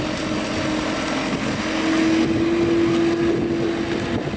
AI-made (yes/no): no